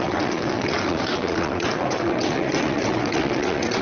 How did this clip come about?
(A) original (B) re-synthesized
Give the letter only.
B